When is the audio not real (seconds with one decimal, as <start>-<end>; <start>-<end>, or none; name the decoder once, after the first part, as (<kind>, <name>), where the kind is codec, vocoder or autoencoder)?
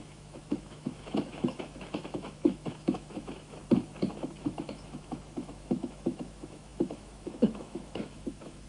0.0-3.6 (autoencoder, DAC-VAE); 4.4-8.7